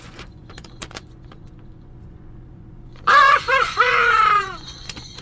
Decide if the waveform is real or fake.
fake